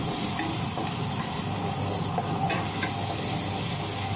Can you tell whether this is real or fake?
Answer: real